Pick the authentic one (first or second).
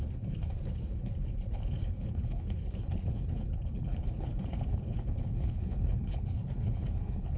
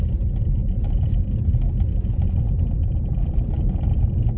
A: second